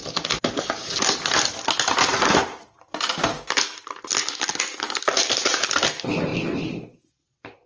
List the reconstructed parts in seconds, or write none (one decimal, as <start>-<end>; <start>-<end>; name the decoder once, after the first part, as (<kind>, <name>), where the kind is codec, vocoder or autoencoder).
none